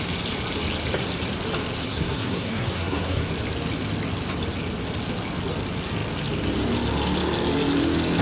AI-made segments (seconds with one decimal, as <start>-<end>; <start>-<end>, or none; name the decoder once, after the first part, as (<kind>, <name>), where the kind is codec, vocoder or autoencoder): 1.8-3.3 (codec, SNAC)